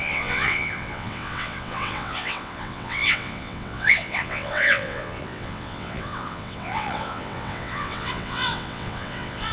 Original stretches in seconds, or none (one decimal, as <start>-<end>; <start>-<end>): none